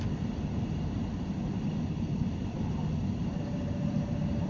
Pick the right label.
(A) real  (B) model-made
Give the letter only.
A